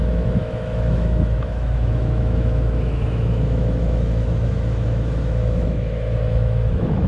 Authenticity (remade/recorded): remade